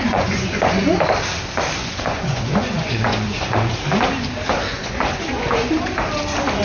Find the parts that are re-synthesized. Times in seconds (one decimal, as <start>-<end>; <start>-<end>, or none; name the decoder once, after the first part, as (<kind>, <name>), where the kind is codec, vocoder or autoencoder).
0.0-0.8 (vocoder, Vocos); 1.8-3.7; 4.7-5.7